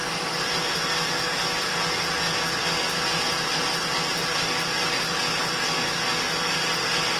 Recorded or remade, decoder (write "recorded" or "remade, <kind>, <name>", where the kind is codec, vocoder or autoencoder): recorded